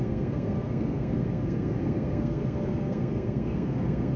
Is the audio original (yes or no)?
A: no